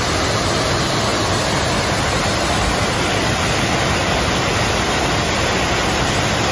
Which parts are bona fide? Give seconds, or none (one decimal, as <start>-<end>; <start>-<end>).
0.0-6.5